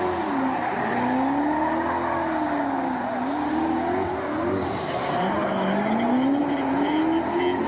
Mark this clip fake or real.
real